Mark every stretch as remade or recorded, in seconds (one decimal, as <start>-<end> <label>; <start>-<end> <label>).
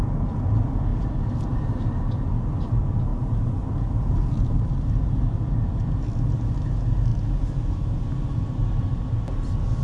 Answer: 0.0-9.8 recorded